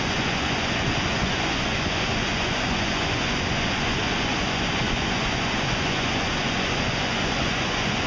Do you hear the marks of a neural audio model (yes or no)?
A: yes